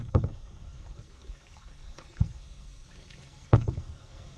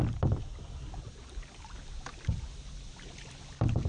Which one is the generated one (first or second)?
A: first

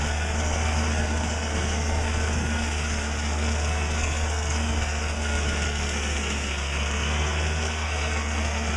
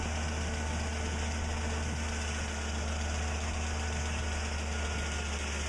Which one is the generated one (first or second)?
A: first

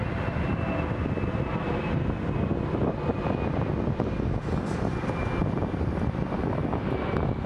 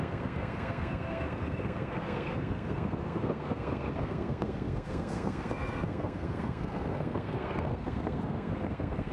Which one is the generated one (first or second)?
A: second